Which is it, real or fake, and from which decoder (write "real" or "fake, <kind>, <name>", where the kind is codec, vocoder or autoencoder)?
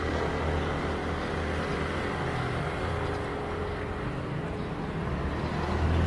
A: real